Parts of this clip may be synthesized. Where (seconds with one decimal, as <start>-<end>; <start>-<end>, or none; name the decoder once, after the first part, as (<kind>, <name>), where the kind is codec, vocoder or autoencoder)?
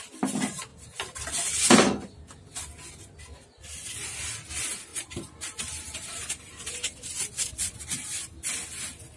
0.7-1.5 (vocoder, BigVGAN v2); 4.9-7.0